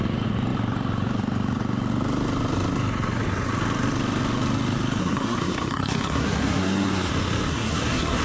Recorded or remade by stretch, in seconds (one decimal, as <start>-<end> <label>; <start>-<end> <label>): 0.0-5.0 recorded; 5.0-7.1 remade; 7.1-7.5 recorded; 7.5-8.2 remade